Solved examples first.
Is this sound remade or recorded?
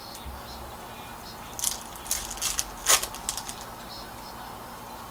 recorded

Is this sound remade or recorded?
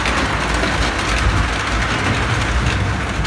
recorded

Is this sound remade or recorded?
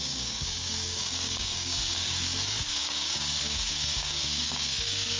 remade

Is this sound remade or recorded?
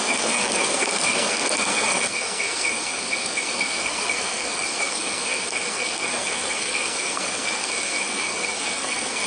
remade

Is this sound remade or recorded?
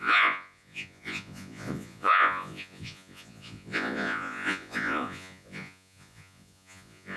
remade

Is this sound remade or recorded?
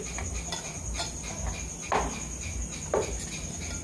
recorded